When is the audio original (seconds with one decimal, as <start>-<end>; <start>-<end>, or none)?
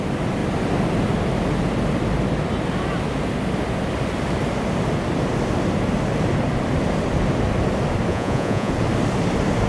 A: 0.0-8.1; 8.7-9.7